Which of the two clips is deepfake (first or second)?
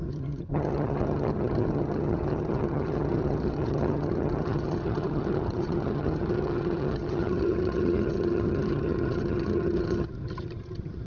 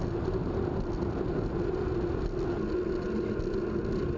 first